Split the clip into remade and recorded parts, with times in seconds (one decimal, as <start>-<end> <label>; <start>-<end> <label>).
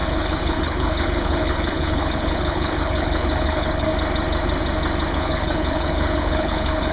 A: 0.0-3.9 remade; 3.9-5.1 recorded; 5.1-6.9 remade